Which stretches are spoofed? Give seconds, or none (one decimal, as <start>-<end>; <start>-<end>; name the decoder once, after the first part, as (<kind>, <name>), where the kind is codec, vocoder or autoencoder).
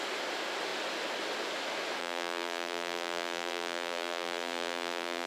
2.0-5.3 (vocoder, BigVGAN v2)